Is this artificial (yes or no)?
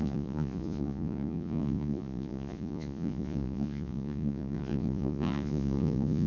yes